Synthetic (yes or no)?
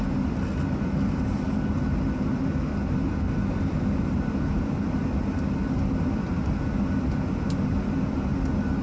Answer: no